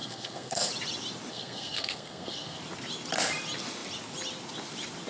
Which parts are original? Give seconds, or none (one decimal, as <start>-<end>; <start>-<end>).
0.7-1.3; 2.6-5.1